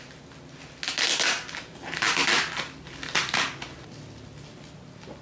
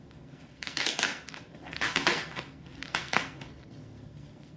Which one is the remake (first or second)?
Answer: second